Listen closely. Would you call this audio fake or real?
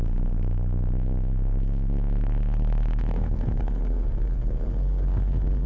fake